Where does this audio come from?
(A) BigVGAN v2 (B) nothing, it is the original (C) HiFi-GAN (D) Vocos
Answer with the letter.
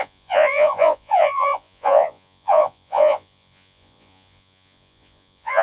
D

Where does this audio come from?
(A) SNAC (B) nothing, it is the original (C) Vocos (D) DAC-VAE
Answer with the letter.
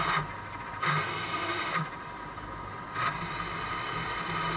B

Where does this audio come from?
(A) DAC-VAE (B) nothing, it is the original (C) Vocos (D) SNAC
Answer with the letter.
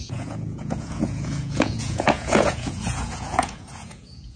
C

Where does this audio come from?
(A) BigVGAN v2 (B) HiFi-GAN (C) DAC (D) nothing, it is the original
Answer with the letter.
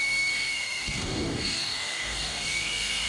C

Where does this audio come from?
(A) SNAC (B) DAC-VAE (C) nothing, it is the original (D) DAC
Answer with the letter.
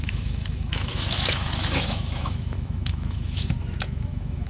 B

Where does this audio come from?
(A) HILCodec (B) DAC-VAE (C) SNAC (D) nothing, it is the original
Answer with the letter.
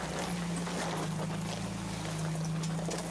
D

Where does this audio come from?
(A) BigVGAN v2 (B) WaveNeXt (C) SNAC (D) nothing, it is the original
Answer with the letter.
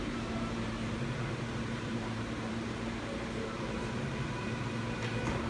A